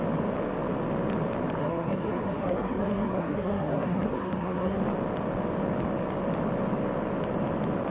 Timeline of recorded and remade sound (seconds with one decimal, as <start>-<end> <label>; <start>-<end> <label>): 0.0-1.6 recorded; 1.6-4.8 remade; 4.8-7.9 recorded